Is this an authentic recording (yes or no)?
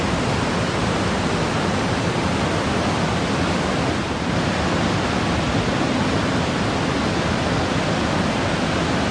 yes